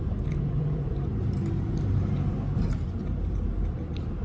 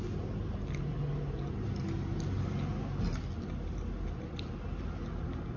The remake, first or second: first